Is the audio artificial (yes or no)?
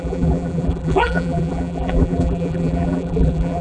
yes